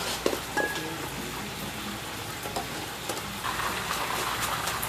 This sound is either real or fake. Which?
real